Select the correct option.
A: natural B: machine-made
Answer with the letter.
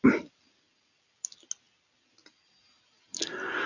A